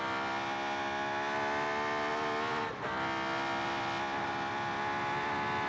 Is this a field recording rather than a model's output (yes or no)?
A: yes